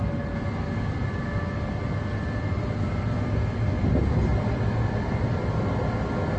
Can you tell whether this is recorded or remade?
recorded